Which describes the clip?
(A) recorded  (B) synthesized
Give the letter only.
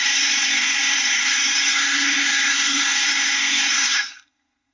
B